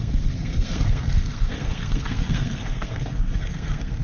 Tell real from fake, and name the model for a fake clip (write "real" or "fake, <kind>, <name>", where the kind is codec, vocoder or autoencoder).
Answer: fake, codec, SNAC